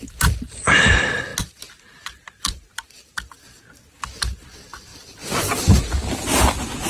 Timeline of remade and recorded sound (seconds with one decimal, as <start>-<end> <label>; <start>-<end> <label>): 0.0-6.9 recorded